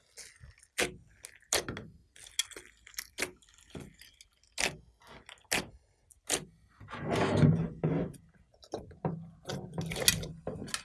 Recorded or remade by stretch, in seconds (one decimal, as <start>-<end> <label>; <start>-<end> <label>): 0.0-10.8 recorded